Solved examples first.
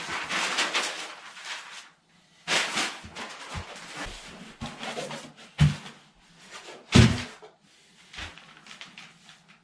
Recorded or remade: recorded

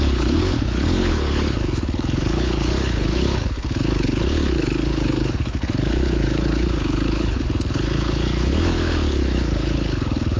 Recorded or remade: remade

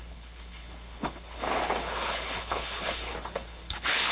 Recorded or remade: remade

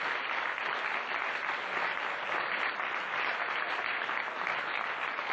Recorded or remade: recorded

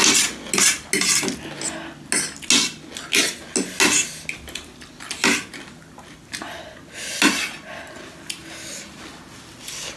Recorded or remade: recorded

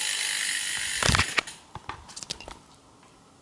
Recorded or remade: recorded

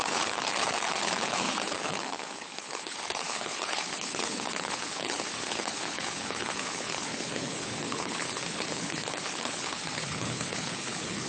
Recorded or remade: remade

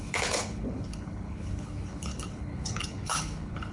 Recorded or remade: remade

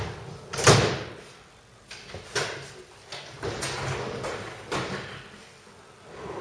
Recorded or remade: recorded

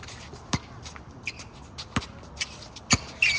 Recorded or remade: recorded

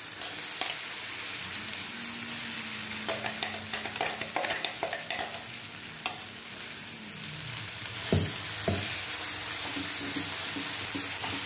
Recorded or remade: recorded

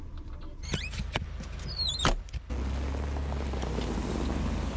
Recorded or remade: recorded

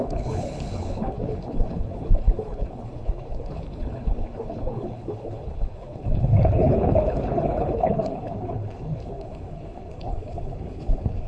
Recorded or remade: remade